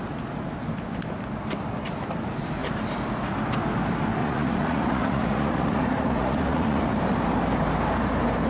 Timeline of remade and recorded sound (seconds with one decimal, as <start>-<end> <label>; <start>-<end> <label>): 0.0-4.2 recorded; 4.2-7.0 remade; 7.0-8.5 recorded